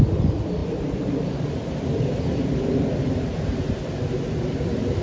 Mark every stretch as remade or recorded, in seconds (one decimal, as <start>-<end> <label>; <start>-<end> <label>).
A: 0.0-5.0 recorded